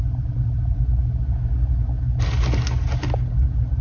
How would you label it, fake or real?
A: real